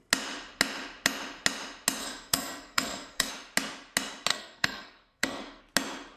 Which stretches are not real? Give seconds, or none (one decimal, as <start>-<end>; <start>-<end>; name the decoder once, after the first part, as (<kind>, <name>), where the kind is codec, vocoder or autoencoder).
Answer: 2.0-3.3 (codec, SNAC); 4.3-5.6